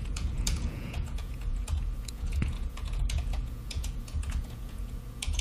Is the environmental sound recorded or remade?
remade